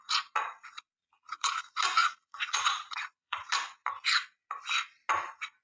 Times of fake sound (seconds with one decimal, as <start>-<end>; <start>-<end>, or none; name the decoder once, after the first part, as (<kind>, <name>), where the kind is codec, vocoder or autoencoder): 1.0-1.6 (vocoder, Vocos); 2.0-3.4